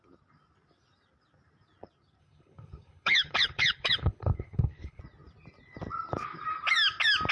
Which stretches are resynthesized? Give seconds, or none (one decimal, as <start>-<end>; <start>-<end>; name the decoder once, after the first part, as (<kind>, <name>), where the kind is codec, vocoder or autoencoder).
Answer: 2.2-5.0 (codec, HILCodec)